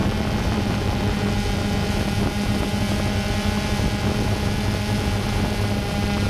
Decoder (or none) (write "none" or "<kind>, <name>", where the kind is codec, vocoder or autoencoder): none